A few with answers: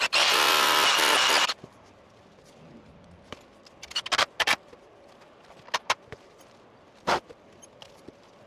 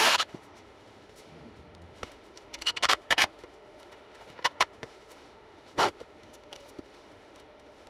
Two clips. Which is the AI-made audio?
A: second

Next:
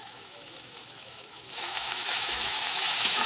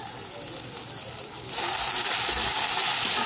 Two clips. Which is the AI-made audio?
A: first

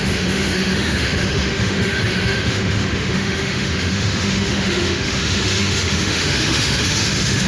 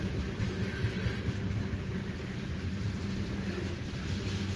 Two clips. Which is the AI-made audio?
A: first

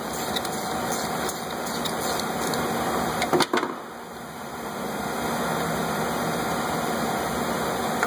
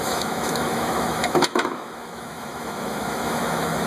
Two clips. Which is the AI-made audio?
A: second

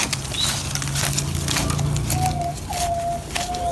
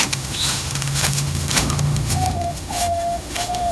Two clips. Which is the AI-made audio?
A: second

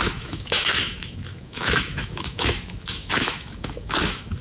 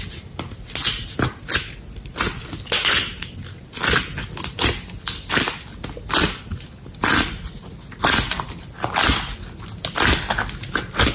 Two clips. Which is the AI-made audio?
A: first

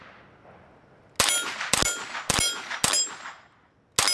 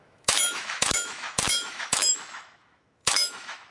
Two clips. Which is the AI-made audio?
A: second